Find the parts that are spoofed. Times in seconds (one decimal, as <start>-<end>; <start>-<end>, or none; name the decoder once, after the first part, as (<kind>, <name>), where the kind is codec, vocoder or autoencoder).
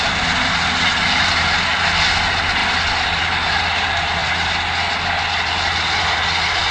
2.6-3.2 (vocoder, BigVGAN v2)